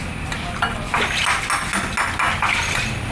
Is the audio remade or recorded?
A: recorded